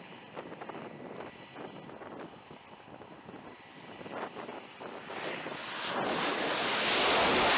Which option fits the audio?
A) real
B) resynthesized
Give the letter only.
A